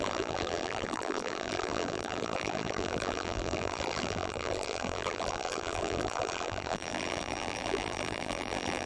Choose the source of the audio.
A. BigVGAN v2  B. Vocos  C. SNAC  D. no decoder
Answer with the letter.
A